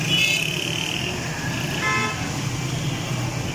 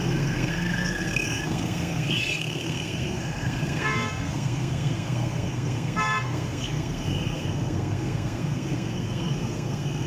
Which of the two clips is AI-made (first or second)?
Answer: second